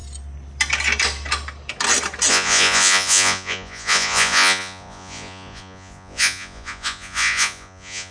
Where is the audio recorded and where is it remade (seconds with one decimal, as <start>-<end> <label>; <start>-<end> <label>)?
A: 0.0-2.3 recorded; 2.3-8.1 remade